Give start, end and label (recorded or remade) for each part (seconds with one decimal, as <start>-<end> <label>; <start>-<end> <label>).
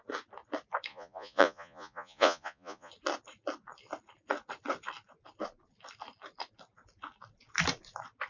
0.0-0.9 recorded; 0.9-2.9 remade; 2.9-8.3 recorded